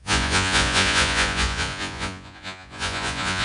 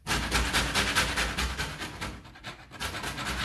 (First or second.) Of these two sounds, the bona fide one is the second